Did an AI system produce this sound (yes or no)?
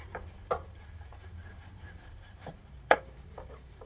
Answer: yes